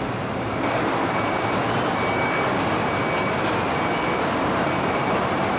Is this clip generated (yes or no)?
no